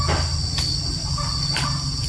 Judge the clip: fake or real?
real